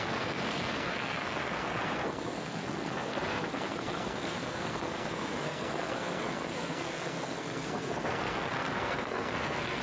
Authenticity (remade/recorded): remade